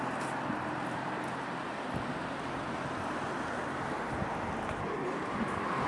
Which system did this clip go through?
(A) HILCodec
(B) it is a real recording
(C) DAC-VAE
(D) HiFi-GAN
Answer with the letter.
B